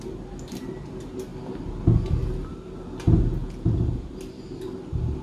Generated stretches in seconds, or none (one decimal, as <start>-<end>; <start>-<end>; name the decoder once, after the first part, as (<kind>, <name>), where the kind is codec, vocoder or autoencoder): 3.4-4.1 (vocoder, Vocos)